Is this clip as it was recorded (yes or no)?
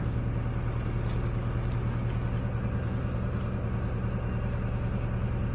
yes